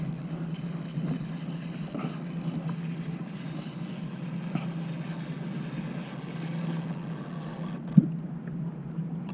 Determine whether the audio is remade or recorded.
recorded